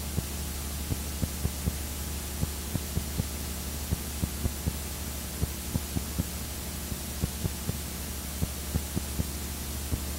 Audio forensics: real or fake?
real